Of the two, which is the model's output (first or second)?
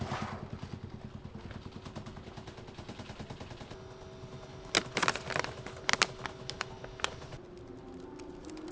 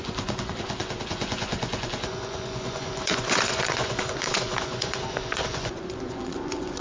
second